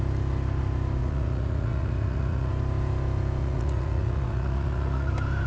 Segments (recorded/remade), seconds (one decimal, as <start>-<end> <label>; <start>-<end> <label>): 0.0-1.0 recorded; 1.0-2.5 remade; 2.5-3.4 recorded; 3.4-5.1 remade; 5.1-5.5 recorded